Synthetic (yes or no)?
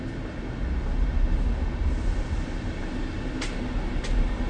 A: no